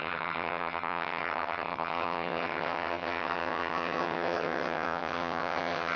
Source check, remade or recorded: remade